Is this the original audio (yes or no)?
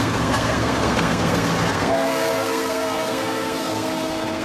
no